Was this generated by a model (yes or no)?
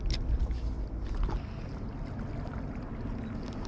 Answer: no